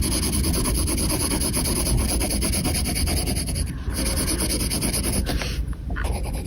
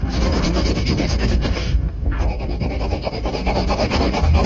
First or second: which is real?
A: first